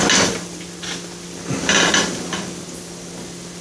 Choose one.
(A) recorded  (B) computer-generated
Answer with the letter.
A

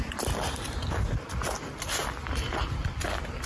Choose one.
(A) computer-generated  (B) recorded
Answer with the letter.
A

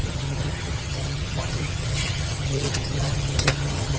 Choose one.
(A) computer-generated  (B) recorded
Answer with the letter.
A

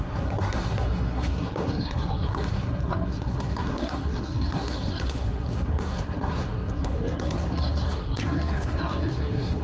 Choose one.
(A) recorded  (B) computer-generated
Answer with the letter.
B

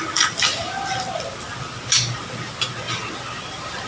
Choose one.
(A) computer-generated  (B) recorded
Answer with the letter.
B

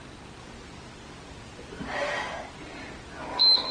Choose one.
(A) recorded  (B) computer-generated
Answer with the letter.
A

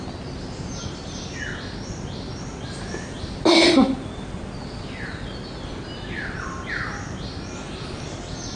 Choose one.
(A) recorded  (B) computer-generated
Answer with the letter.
A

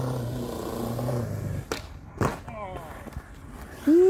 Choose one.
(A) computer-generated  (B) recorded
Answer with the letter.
B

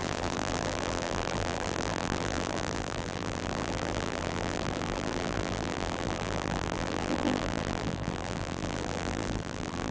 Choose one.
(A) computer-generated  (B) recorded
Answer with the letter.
A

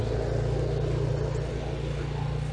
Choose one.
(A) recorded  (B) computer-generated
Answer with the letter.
A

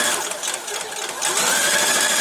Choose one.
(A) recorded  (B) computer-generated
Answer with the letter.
A